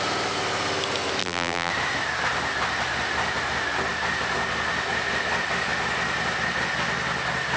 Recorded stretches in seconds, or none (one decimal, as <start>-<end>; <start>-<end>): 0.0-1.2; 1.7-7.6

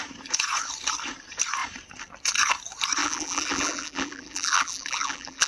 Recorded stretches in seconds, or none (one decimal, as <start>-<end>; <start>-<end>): 0.0-3.0

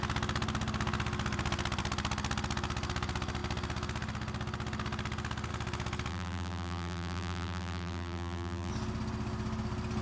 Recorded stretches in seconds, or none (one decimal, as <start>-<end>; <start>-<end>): 0.0-6.1; 8.7-10.0

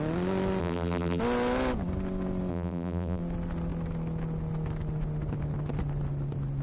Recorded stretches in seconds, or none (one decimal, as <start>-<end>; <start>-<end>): 0.0-0.6; 1.2-2.5; 3.2-6.6

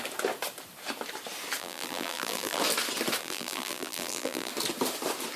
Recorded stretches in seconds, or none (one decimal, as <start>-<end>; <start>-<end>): 0.0-1.6; 2.6-3.2; 4.5-5.4